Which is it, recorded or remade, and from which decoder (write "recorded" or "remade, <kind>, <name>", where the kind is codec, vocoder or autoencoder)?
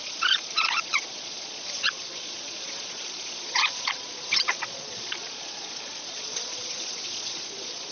remade, vocoder, Vocos